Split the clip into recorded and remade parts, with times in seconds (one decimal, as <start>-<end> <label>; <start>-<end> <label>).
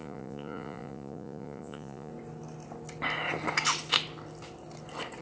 0.0-2.1 remade; 2.1-5.2 recorded